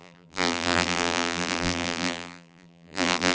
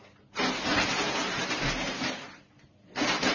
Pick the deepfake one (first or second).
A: first